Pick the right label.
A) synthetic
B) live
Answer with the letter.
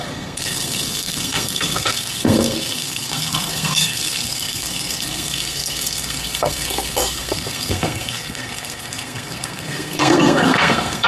A